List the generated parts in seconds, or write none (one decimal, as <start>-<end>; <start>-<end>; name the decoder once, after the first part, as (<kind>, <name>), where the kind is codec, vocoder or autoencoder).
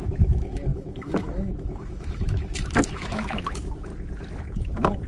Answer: 0.0-3.9 (autoencoder, DAC-VAE); 4.4-5.1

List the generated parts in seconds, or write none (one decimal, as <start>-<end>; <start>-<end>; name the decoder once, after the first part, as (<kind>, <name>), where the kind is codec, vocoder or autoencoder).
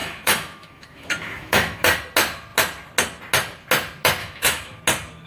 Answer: 0.0-1.8 (autoencoder, DAC-VAE); 4.2-4.8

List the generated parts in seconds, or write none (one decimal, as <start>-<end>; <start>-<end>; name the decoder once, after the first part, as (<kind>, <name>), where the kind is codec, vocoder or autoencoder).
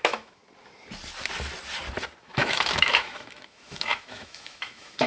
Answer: 0.0-0.4 (autoencoder, DAC-VAE); 2.2-5.1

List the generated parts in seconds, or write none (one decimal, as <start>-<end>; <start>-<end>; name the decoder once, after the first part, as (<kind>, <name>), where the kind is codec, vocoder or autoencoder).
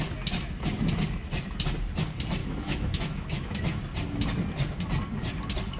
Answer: 2.4-3.8 (autoencoder, DAC-VAE)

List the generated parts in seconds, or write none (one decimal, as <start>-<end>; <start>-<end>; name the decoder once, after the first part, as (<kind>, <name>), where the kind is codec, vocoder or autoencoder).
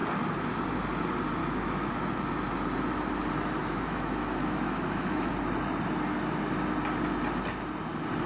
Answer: 1.4-1.9 (autoencoder, DAC-VAE); 3.6-5.3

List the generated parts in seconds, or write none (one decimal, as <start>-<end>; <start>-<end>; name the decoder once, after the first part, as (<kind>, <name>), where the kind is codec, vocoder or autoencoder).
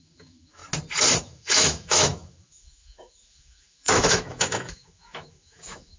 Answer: 0.0-0.6 (autoencoder, DAC-VAE); 1.2-6.0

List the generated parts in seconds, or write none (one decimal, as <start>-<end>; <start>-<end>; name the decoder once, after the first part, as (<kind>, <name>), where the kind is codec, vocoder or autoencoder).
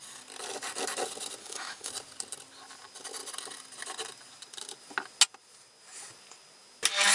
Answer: 1.4-1.9 (autoencoder, DAC-VAE)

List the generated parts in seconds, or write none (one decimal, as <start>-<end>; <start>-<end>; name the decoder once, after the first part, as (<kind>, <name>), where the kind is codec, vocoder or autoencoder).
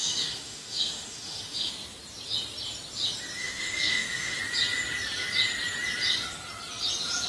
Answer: 0.0-1.7 (autoencoder, DAC-VAE); 3.4-4.4